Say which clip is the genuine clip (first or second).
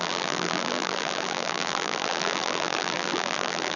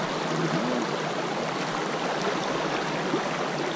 second